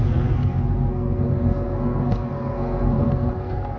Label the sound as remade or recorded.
remade